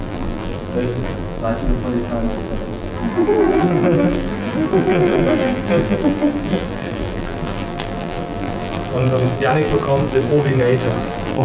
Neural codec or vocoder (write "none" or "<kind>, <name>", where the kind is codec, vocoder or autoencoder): vocoder, BigVGAN v2